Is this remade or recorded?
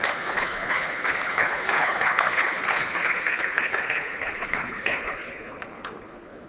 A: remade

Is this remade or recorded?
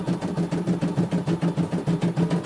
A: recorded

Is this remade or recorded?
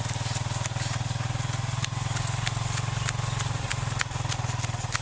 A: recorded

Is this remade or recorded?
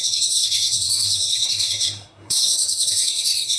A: remade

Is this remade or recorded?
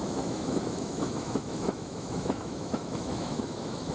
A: remade